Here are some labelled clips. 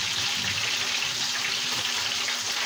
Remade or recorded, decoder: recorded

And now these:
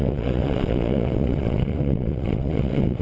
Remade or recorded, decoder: remade, vocoder, WaveNeXt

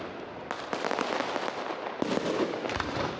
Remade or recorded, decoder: recorded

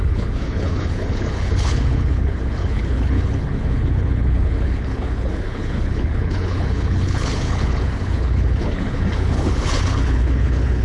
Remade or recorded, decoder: remade, codec, HILCodec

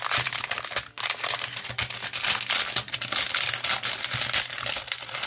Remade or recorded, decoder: recorded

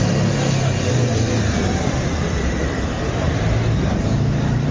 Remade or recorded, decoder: recorded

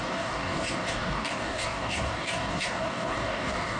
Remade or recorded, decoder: remade, codec, DAC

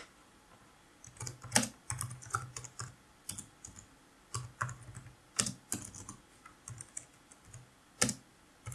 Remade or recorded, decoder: recorded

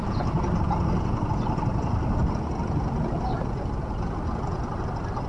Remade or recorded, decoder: recorded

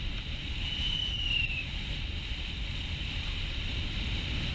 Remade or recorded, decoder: remade, vocoder, BigVGAN v2